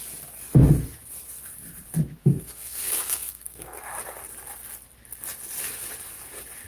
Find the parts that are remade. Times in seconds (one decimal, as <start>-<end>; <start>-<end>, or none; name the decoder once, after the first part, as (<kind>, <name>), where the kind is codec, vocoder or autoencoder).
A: 2.2-3.8 (codec, SNAC)